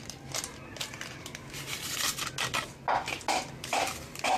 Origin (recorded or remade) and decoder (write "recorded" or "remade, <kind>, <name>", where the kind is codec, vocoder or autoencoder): recorded